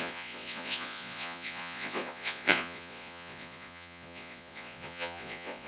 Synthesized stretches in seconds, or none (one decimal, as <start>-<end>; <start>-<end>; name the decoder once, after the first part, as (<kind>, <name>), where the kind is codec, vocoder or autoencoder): 0.0-5.7 (vocoder, Vocos)